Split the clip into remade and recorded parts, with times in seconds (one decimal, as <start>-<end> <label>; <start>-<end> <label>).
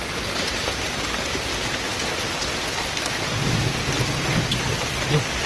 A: 0.0-5.5 recorded